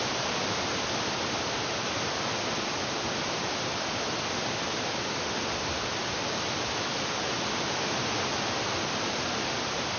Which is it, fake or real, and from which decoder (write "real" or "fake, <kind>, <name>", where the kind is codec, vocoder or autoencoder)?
fake, vocoder, BigVGAN v2